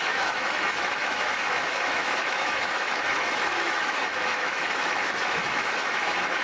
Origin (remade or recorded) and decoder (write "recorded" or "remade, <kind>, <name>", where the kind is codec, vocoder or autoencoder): remade, autoencoder, DAC-VAE